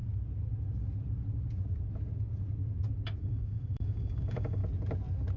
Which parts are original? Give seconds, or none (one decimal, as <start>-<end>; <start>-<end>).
0.0-3.2; 4.6-5.4